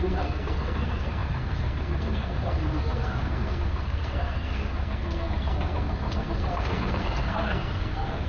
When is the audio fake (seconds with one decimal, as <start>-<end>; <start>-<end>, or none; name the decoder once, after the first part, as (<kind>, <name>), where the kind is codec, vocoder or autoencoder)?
0.0-8.3 (codec, SNAC)